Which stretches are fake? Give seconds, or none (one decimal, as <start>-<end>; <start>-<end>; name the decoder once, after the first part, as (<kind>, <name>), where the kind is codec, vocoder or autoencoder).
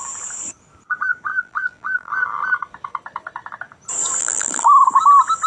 1.3-2.1 (vocoder, BigVGAN v2); 4.2-4.7